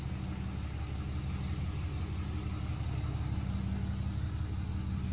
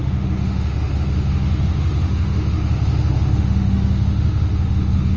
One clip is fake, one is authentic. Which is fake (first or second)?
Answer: second